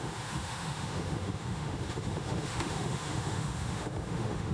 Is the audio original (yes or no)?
no